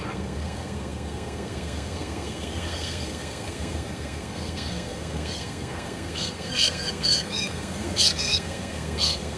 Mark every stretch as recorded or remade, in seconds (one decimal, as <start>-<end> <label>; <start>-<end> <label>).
0.0-9.4 remade